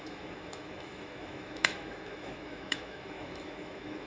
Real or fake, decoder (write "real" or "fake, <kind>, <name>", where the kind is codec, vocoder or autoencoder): fake, autoencoder, DAC-VAE